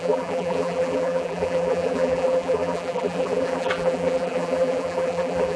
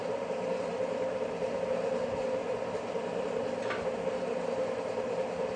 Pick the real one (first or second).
second